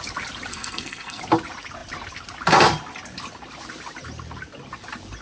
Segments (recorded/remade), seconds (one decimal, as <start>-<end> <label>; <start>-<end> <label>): 0.0-0.5 recorded; 0.5-1.2 remade; 1.2-5.2 recorded